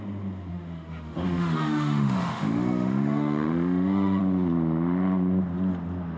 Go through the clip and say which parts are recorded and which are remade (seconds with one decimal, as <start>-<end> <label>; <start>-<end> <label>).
0.0-0.5 recorded; 0.5-4.2 remade; 4.2-6.2 recorded